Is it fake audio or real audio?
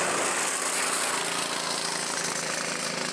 real